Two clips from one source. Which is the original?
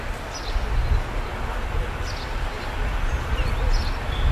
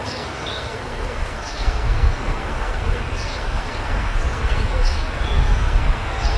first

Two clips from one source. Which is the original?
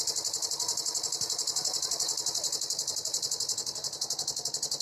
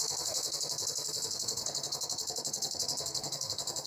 first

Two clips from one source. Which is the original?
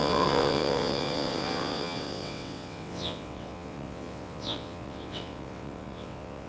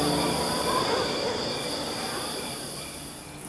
second